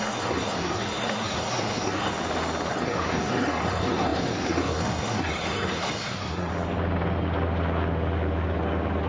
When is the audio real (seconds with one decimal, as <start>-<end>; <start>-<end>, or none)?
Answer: 2.1-2.7; 6.5-9.1